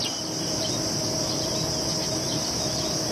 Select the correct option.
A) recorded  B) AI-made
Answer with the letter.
A